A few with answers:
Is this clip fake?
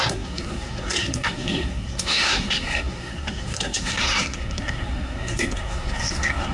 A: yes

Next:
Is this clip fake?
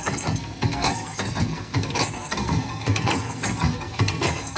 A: yes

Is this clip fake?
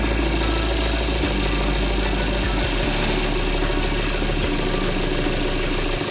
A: no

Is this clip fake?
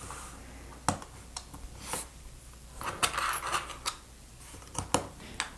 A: no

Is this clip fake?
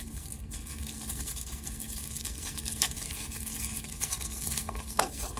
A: yes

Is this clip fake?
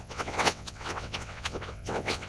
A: yes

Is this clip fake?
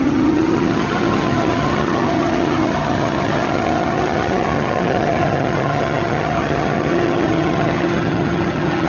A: yes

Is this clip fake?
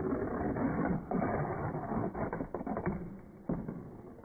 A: yes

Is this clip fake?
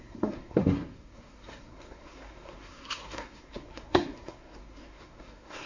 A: yes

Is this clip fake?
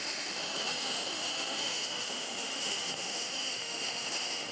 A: yes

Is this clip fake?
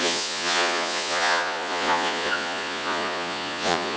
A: yes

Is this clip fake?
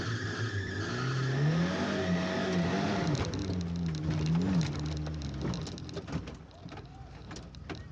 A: no